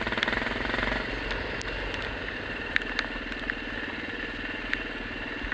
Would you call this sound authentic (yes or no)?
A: yes